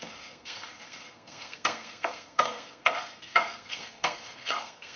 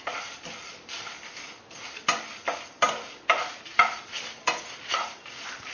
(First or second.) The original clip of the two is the second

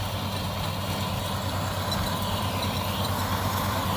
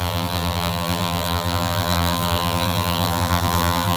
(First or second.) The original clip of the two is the first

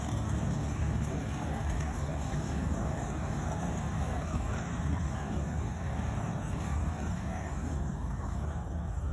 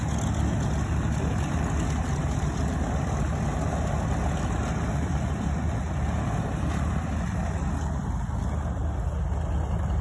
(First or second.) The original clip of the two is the second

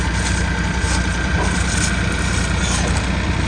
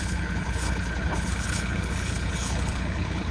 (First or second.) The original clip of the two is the first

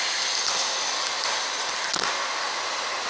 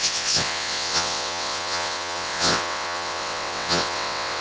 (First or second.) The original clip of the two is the first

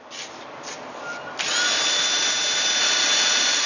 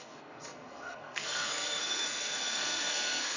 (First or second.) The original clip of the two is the first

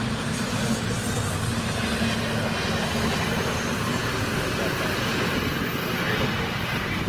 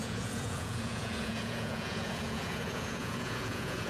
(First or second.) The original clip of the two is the first